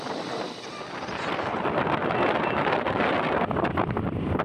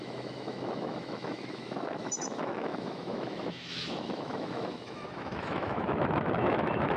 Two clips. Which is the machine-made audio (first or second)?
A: second